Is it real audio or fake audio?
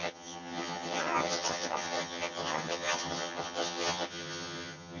fake